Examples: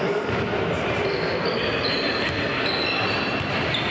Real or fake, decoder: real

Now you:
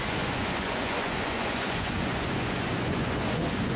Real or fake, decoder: fake, vocoder, Vocos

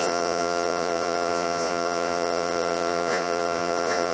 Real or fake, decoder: fake, vocoder, Vocos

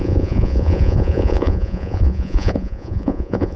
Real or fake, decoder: fake, vocoder, Vocos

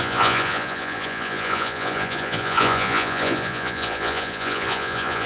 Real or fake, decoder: fake, vocoder, Vocos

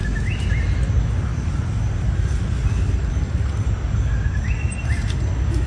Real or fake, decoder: real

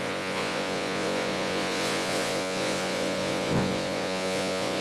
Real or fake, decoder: fake, vocoder, Vocos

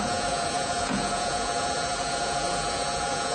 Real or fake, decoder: fake, vocoder, Vocos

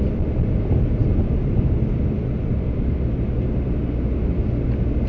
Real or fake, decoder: real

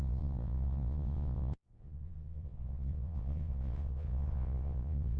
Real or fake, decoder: fake, vocoder, Vocos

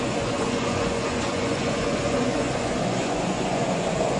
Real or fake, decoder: fake, vocoder, Vocos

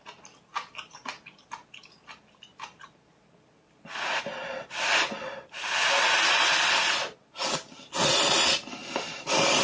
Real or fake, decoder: real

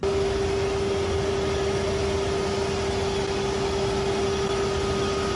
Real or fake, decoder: real